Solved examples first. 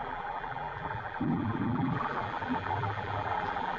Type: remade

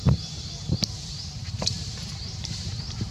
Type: remade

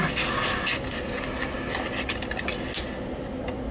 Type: recorded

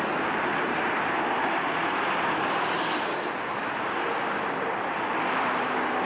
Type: remade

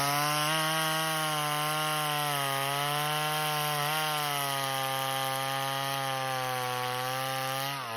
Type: recorded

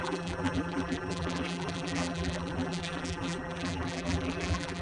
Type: remade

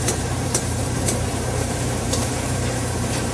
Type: remade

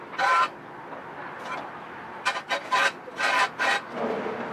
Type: remade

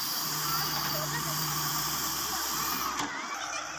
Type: remade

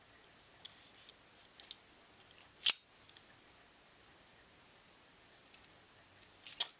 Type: recorded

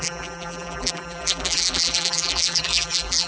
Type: remade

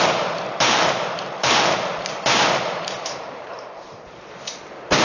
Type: remade